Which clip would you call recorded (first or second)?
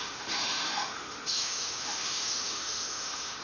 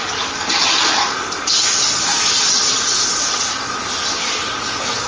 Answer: second